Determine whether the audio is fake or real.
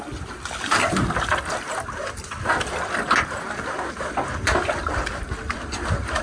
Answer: real